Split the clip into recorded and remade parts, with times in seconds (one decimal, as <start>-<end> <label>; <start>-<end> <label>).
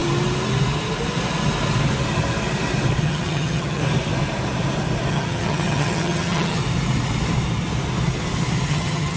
0.0-3.0 recorded; 3.0-3.8 remade; 3.8-5.1 recorded; 5.1-6.6 remade; 6.6-8.7 recorded; 8.7-9.2 remade